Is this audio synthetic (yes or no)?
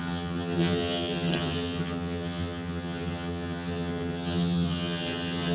yes